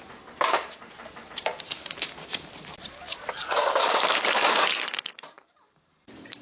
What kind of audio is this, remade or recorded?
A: remade